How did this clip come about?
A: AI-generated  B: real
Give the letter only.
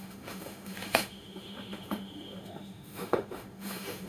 A